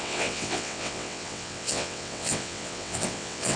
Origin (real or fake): fake